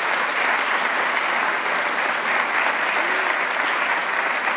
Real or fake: real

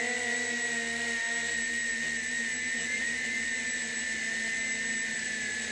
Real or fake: real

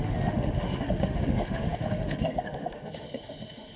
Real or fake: fake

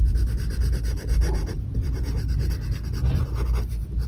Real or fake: real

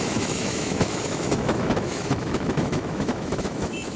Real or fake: fake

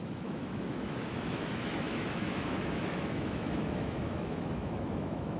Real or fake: fake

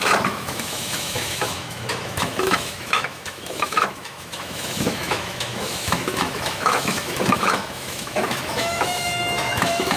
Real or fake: fake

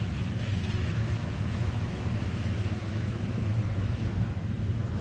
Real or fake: fake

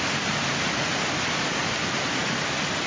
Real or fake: real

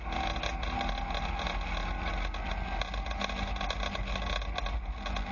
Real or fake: real